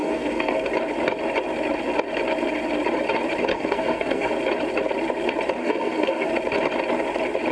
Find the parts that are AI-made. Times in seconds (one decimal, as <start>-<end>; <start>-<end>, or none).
0.0-0.7; 3.5-4.3; 5.6-6.3

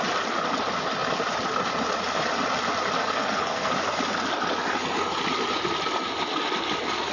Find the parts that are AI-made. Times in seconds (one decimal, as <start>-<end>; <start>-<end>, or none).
3.0-3.7

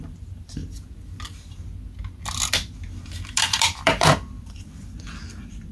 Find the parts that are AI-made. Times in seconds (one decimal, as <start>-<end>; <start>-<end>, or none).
0.0-0.6; 3.3-5.7